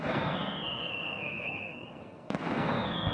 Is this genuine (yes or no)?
no